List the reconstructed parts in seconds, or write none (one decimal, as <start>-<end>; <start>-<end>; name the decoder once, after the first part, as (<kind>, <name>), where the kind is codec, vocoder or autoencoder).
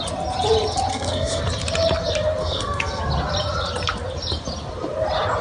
0.9-1.4 (codec, SNAC); 2.4-3.0